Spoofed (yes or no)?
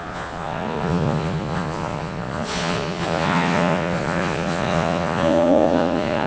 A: yes